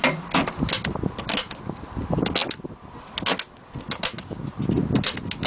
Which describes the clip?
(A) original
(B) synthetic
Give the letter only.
A